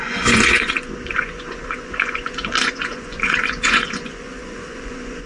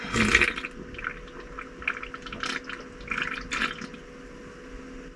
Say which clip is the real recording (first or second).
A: second